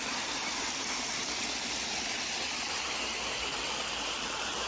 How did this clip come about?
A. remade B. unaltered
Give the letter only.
B